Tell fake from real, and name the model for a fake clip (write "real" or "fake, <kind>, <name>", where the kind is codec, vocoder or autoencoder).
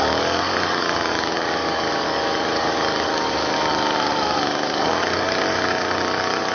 fake, codec, DAC